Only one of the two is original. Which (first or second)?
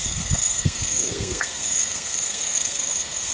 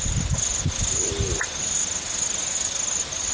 second